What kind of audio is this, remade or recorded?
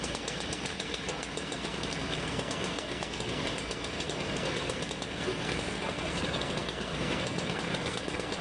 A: remade